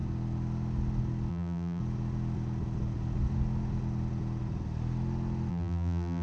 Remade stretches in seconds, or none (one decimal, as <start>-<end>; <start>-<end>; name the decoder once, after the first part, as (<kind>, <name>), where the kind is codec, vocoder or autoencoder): 1.3-1.8 (vocoder, BigVGAN v2); 5.5-6.2

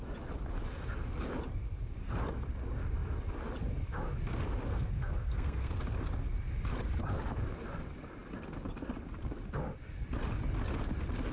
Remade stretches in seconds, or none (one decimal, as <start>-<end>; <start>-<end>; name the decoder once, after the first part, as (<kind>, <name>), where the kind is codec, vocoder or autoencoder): 4.7-5.8 (codec, SNAC)